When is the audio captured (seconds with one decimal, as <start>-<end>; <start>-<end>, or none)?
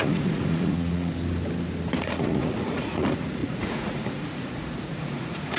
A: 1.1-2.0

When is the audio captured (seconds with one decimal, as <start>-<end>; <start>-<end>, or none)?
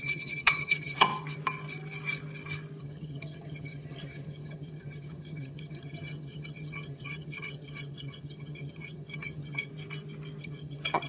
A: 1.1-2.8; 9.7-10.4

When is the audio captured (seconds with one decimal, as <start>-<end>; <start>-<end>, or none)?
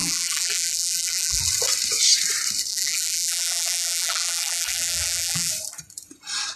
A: 1.4-2.7; 5.5-6.6